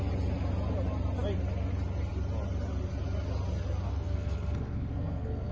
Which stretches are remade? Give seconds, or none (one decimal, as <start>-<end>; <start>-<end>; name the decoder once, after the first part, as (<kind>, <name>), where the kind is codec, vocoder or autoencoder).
3.9-5.5 (codec, SNAC)